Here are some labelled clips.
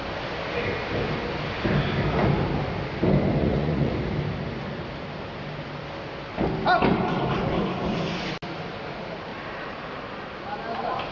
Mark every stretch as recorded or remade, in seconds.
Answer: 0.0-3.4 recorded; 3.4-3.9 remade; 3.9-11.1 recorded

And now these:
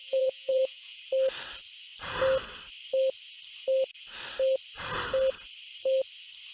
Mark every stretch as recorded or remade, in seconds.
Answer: 0.0-1.0 remade; 1.0-6.5 recorded

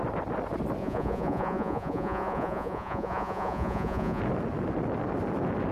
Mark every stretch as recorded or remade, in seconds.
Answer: 0.0-0.8 recorded; 0.8-4.2 remade; 4.2-5.7 recorded

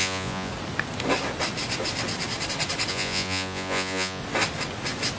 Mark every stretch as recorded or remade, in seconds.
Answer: 0.0-0.5 remade; 0.5-2.9 recorded; 2.9-4.2 remade; 4.2-5.2 recorded

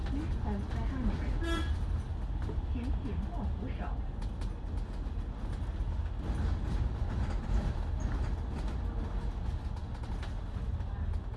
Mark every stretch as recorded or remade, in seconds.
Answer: 0.0-11.4 recorded

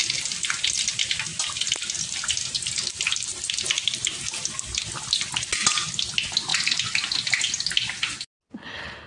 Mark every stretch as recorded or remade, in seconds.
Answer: 0.0-9.1 recorded

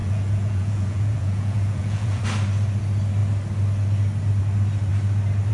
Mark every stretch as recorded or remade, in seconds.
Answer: 0.0-2.2 remade; 2.2-5.5 recorded